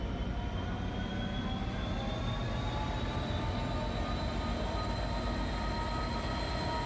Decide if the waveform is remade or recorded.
recorded